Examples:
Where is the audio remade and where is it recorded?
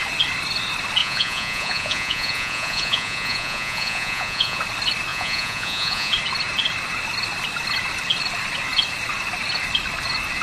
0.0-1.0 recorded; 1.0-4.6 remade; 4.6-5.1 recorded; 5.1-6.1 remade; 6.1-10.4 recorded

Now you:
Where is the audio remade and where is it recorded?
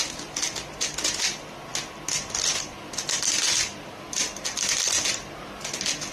0.0-6.1 recorded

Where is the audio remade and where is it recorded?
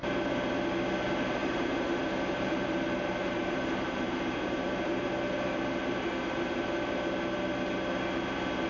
0.0-1.4 recorded; 1.4-5.1 remade; 5.1-8.7 recorded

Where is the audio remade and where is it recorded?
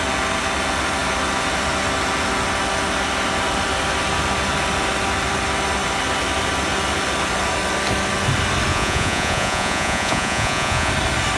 0.0-8.7 recorded; 8.7-10.9 remade; 10.9-11.4 recorded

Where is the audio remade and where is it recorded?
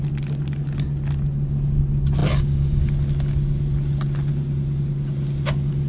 0.0-5.9 recorded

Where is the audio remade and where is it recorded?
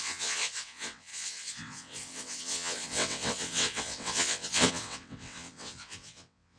0.0-6.6 remade